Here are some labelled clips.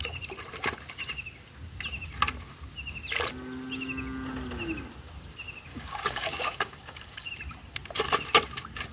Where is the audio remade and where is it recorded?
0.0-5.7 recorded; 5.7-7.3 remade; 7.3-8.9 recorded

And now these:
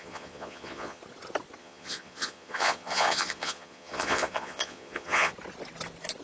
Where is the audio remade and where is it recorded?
0.0-1.0 remade; 1.0-1.6 recorded; 1.6-5.3 remade; 5.3-6.2 recorded

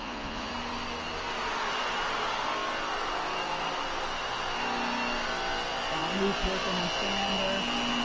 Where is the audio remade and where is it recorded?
0.0-0.5 remade; 0.5-8.0 recorded

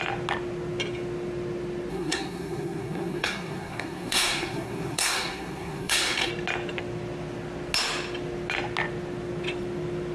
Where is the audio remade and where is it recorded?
0.0-1.9 recorded; 1.9-6.3 remade; 6.3-10.1 recorded